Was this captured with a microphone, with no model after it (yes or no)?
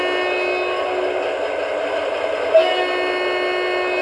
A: yes